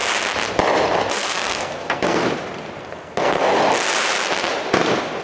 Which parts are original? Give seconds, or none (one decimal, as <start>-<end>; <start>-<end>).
0.0-1.1; 2.2-2.8; 3.5-5.2